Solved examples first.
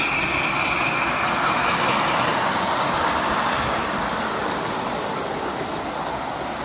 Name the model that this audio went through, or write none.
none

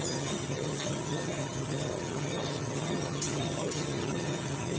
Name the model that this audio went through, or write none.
vocoder, HiFi-GAN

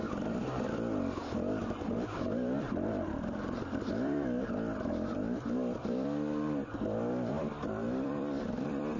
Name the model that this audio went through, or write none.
vocoder, BigVGAN v2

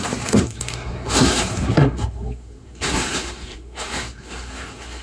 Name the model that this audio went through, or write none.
codec, SNAC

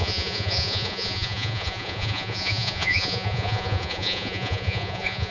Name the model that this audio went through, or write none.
vocoder, Vocos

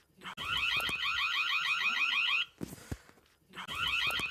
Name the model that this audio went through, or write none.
none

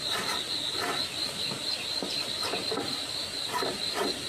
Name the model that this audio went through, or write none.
none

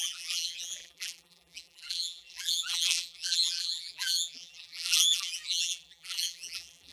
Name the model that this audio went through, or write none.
vocoder, BigVGAN v2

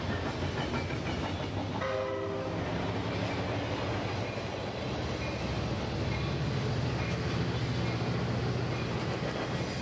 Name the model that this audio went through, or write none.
none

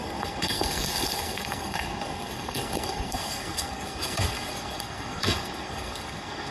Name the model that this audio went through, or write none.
codec, SNAC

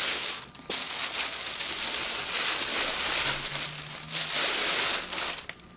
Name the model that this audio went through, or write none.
none